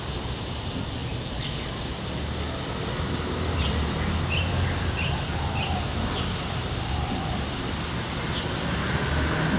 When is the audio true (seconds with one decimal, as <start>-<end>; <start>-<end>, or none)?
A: 0.0-1.0; 1.5-9.6